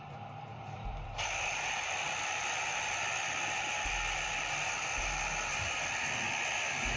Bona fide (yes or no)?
no